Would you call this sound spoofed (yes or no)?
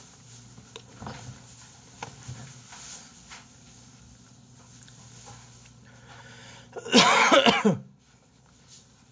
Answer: no